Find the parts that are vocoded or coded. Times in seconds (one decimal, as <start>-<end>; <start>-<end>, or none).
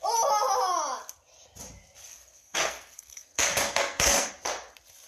2.1-4.3